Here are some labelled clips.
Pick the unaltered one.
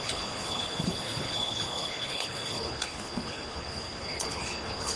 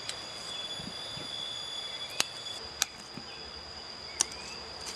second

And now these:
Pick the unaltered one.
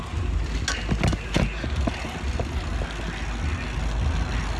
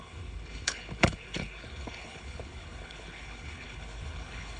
first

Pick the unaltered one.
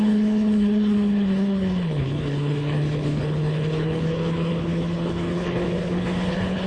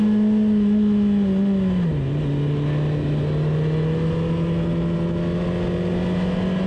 second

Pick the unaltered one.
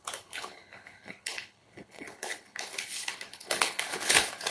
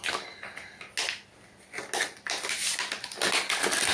second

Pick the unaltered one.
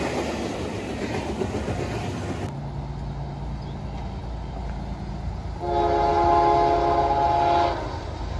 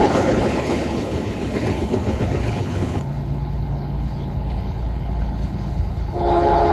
first